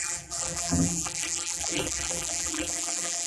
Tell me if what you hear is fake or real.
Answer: fake